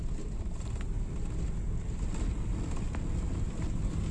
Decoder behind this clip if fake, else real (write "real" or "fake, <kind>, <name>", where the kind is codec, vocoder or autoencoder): real